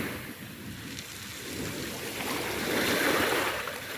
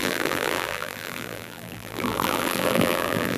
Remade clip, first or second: second